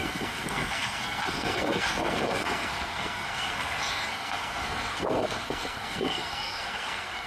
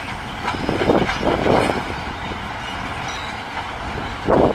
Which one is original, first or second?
second